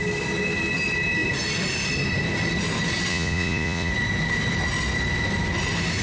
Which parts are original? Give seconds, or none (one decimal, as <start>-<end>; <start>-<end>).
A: 0.0-3.1; 3.9-6.0